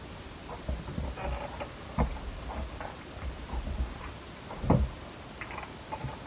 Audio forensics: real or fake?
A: real